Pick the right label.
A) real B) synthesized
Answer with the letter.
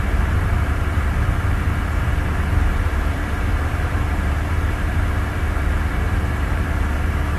B